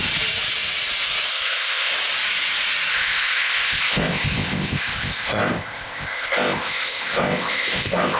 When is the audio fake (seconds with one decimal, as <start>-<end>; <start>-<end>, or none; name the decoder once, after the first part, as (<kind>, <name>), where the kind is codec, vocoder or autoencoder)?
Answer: 1.3-1.9 (codec, ZipCodec); 2.9-8.2